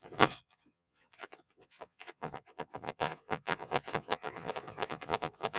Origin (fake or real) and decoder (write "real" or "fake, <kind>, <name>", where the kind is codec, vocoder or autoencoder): fake, vocoder, Vocos